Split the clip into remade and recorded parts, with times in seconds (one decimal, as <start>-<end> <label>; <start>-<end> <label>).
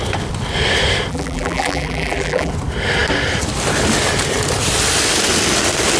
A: 0.0-1.1 recorded; 1.1-2.5 remade; 2.5-6.0 recorded